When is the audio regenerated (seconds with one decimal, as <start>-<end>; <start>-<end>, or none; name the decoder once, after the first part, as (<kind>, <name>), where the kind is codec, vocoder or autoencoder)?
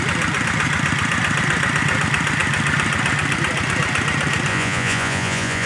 4.5-5.7 (vocoder, Vocos)